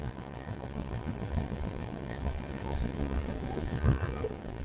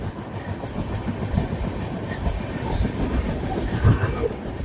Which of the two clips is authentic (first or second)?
second